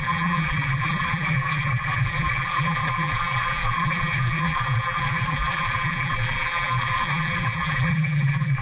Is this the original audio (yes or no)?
no